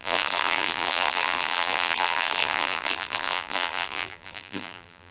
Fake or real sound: fake